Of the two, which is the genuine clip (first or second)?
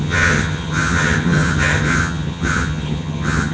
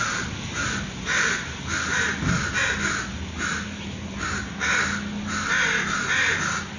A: second